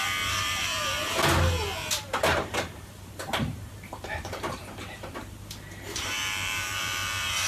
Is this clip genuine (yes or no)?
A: no